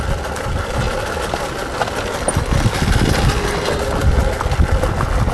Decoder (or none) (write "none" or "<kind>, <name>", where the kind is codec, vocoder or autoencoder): none